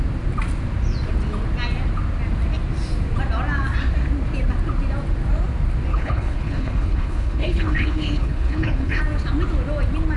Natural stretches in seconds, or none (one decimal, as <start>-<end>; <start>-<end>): 0.0-5.9; 9.0-10.2